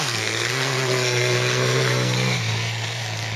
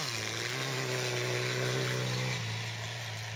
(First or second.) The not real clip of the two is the first